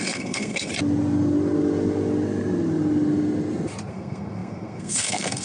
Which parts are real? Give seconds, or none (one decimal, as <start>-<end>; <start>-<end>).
0.7-3.9